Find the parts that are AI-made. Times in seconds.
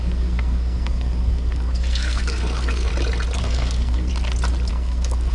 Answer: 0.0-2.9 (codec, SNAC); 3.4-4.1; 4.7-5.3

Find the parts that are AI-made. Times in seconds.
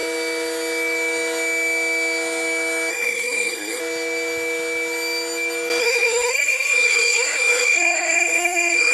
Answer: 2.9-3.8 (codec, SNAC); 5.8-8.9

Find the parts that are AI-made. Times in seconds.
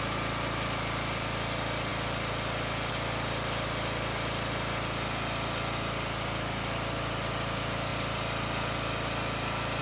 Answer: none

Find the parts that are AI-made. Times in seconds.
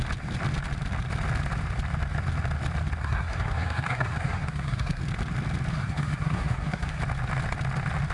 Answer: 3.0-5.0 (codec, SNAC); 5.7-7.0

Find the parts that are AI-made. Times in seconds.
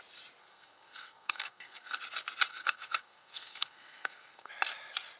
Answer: 0.4-2.0 (codec, SNAC); 2.5-4.5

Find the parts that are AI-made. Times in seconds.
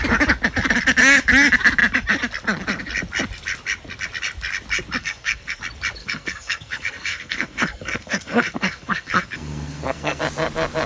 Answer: 5.0-5.6 (codec, SNAC); 6.0-10.2